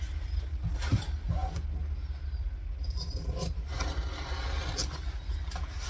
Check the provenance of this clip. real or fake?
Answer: real